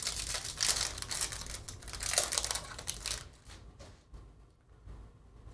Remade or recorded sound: recorded